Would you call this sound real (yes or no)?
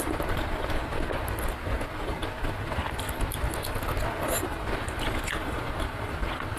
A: yes